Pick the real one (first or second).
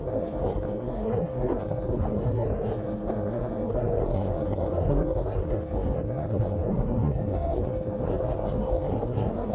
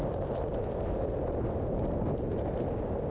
second